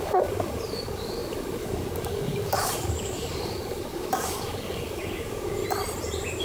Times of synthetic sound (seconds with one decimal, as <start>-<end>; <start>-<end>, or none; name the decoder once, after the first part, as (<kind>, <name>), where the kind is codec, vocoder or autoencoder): 0.0-5.6 (codec, DAC)